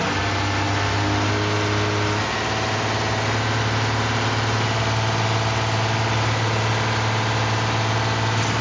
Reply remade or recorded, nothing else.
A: recorded